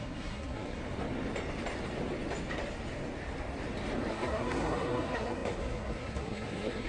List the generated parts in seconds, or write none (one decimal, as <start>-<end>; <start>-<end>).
0.0-0.8; 4.1-6.9